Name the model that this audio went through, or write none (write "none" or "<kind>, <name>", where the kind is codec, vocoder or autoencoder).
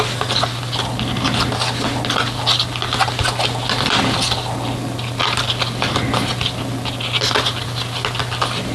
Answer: none